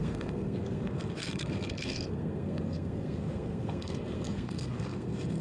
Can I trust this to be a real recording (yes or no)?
no